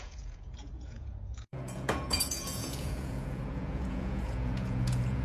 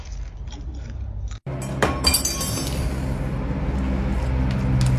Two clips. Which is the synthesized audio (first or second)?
first